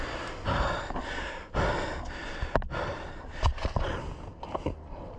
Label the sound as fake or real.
real